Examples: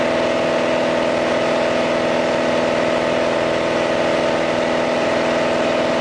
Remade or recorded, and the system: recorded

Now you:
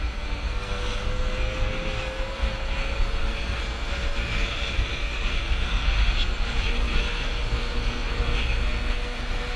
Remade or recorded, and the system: remade, codec, SNAC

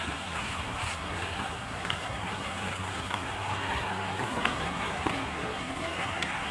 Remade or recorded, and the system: remade, codec, SNAC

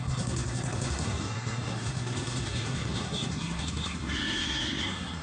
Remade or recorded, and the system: remade, codec, SNAC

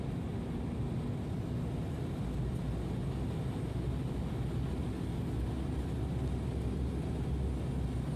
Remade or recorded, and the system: recorded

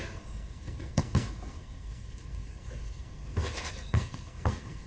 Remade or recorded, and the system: remade, codec, SNAC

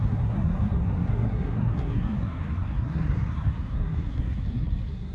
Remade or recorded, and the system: remade, codec, SNAC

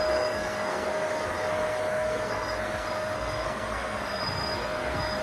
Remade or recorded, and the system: remade, codec, SNAC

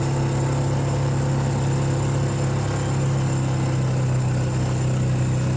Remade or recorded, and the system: recorded